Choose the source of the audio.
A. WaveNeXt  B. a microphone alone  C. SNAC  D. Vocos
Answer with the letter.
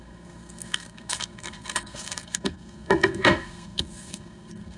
C